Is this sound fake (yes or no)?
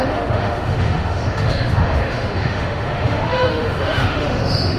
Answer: yes